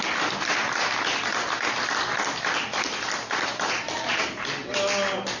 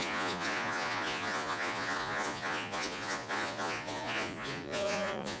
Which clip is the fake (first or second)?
second